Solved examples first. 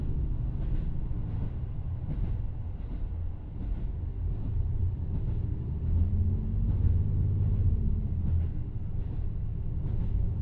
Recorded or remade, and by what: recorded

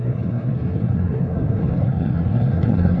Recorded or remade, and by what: remade, codec, SNAC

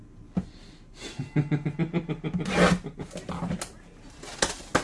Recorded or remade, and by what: recorded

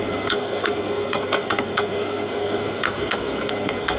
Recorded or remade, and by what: remade, codec, SNAC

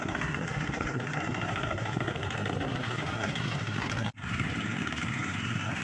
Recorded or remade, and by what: remade, codec, SNAC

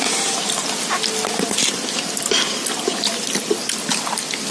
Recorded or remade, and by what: recorded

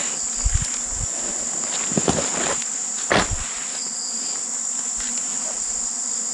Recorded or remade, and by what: recorded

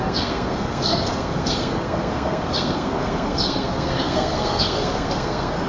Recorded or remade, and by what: remade, codec, SNAC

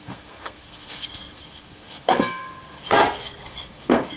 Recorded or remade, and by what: remade, codec, SNAC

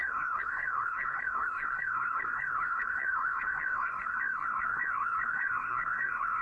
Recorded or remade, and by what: remade, codec, SNAC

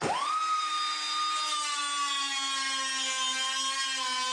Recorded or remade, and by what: recorded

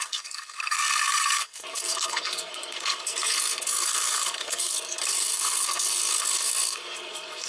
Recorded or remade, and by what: remade, codec, SNAC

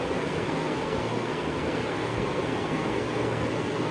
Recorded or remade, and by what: remade, codec, SNAC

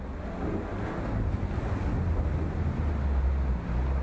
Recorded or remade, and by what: recorded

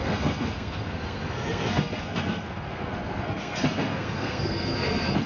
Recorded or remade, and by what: remade, codec, SNAC